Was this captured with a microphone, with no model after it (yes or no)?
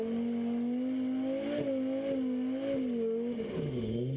yes